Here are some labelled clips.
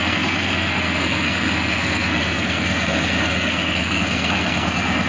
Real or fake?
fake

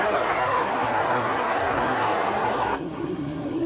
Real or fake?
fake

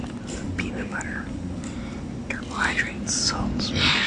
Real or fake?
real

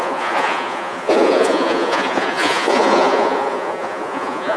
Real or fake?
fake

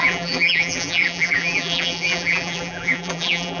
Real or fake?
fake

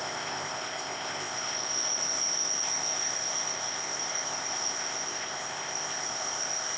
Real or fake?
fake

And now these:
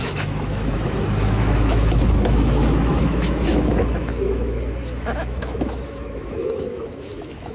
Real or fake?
fake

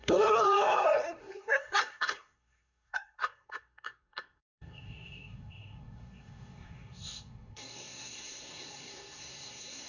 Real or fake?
fake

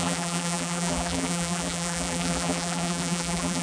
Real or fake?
fake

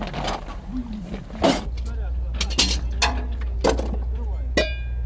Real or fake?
real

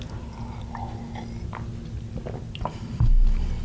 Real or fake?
real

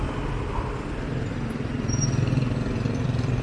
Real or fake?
fake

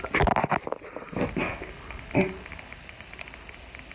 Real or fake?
real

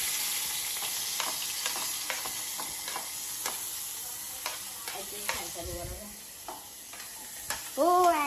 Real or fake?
real